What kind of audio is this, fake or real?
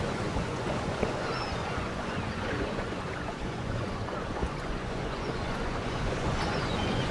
fake